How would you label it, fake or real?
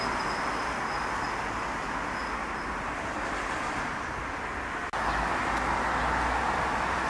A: real